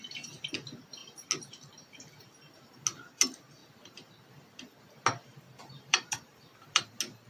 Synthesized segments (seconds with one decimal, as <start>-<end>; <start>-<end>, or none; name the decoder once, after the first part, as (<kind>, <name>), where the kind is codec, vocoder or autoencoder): 5.3-6.8 (vocoder, BigVGAN v2)